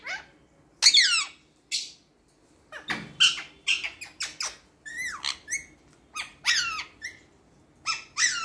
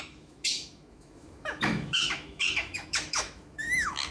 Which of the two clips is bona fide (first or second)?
first